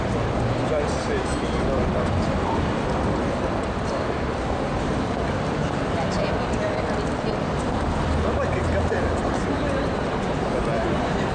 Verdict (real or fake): fake